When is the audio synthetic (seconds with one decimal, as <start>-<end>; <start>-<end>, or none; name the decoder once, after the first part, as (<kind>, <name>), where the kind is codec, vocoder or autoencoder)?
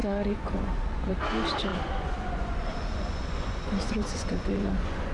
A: 0.0-1.1 (vocoder, Vocos); 1.7-5.1